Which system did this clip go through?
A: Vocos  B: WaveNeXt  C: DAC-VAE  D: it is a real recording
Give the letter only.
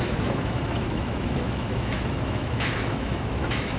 C